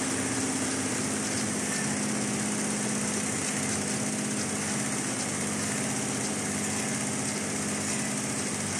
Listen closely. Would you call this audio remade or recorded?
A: recorded